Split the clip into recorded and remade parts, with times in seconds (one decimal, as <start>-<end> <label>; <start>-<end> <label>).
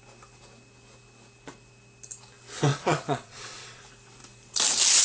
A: 0.0-2.7 recorded; 2.7-3.8 remade; 3.8-5.0 recorded